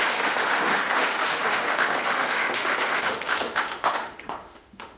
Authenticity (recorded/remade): remade